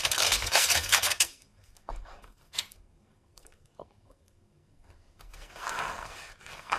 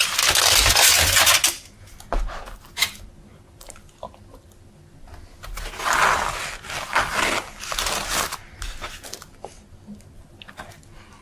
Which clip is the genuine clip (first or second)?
second